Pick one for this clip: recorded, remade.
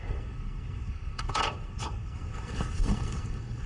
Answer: remade